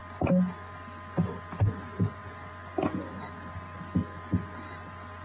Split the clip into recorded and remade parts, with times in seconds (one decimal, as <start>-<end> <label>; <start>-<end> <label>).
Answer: 0.0-5.2 recorded